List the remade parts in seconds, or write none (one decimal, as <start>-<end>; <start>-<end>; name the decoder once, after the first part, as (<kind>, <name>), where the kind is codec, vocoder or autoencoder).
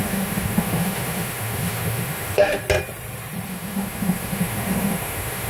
0.0-2.6 (autoencoder, DAC-VAE); 3.5-5.5